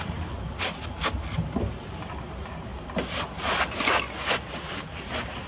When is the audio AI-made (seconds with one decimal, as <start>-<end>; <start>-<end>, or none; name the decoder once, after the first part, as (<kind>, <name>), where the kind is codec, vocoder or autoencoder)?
none